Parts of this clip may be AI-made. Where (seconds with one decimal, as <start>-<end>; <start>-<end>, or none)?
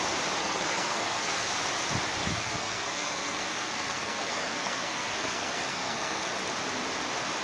0.4-1.5; 2.2-6.3